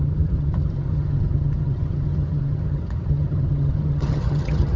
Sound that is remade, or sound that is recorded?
remade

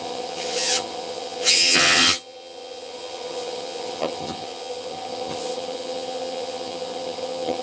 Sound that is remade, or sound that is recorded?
remade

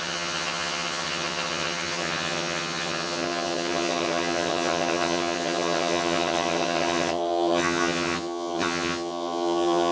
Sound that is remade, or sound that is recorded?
remade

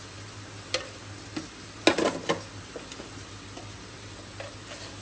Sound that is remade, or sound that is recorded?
recorded